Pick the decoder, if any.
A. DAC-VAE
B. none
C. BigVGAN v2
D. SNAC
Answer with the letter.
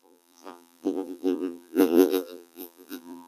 C